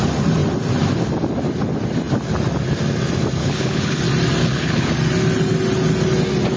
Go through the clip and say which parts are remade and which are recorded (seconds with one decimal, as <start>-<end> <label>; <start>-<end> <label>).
0.0-3.4 recorded; 3.4-4.0 remade; 4.0-4.4 recorded; 4.4-4.9 remade; 4.9-6.6 recorded